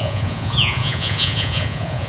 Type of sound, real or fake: fake